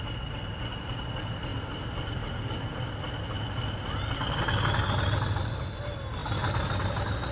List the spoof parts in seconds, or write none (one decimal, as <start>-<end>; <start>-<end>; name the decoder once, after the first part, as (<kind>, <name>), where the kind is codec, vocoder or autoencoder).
none